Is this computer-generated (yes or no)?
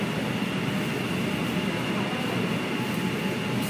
no